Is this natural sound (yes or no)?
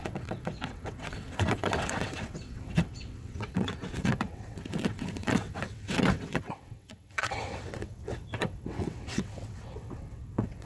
no